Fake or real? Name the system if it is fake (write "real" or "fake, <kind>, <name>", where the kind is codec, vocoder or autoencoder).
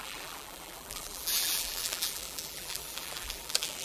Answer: fake, vocoder, BigVGAN v2